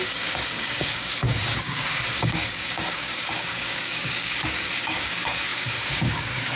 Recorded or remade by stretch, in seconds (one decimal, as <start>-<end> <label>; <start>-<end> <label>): 0.0-6.6 remade

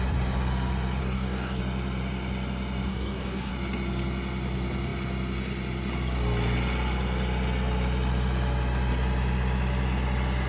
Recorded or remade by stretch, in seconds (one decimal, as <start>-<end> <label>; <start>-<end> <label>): 0.0-1.0 recorded; 1.0-1.6 remade; 1.6-2.9 recorded; 2.9-3.5 remade; 3.5-10.5 recorded

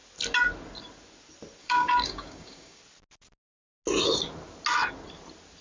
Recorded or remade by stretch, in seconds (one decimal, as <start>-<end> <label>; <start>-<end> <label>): 0.0-1.6 recorded; 1.6-2.8 remade; 2.8-5.6 recorded